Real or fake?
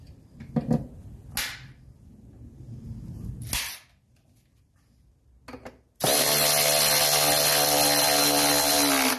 real